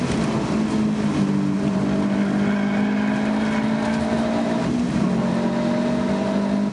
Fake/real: real